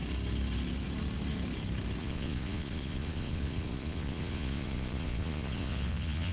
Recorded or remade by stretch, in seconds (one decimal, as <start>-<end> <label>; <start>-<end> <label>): 0.0-2.0 recorded; 2.0-6.3 remade